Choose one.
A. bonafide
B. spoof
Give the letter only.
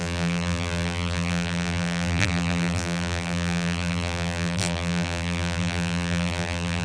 B